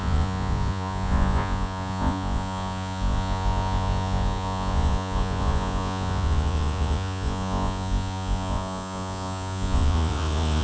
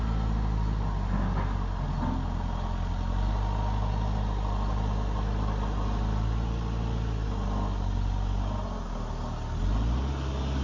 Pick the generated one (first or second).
first